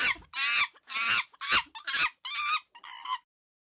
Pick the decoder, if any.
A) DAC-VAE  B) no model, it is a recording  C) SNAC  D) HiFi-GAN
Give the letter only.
B